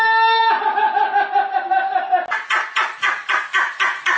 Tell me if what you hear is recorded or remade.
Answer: recorded